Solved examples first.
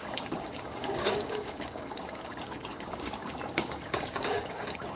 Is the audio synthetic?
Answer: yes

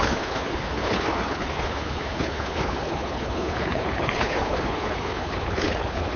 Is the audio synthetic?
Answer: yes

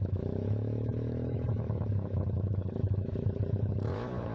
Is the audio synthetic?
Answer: yes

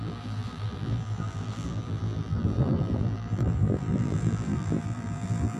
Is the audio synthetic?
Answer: yes